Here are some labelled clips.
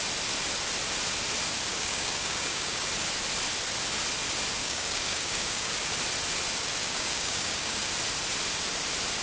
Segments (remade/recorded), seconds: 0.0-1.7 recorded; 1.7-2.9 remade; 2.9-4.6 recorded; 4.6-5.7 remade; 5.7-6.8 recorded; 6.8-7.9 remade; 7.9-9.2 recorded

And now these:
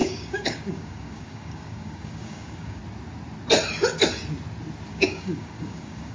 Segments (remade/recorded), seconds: 0.0-2.8 remade; 2.8-4.9 recorded; 4.9-6.1 remade

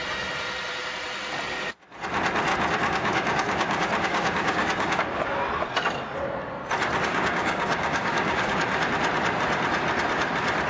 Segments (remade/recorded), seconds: 0.0-2.5 recorded; 2.5-5.2 remade; 5.2-7.1 recorded; 7.1-8.8 remade; 8.8-10.7 recorded

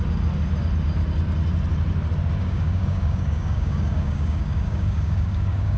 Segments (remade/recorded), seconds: 0.0-2.4 recorded; 2.4-5.8 remade

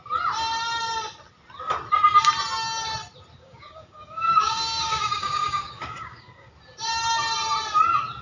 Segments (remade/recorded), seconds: 0.0-3.4 recorded; 3.4-6.5 remade; 6.5-8.2 recorded

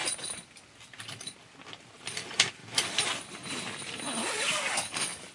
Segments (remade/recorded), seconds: 0.0-4.2 recorded; 4.2-5.3 remade

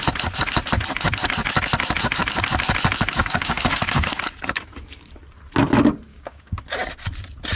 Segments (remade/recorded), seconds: 0.0-3.2 recorded; 3.2-4.2 remade; 4.2-6.1 recorded; 6.1-6.6 remade; 6.6-7.5 recorded

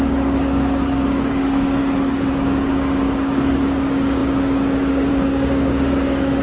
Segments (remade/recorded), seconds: 0.0-1.8 remade; 1.8-2.3 recorded; 2.3-6.4 remade